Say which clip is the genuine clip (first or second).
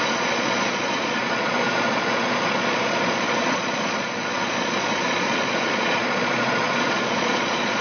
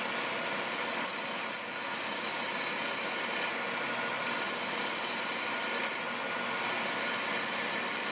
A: second